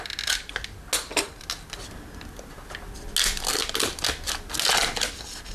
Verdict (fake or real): real